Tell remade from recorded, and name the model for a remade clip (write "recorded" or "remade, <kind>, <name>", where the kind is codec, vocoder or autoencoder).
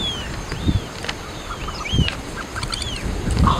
recorded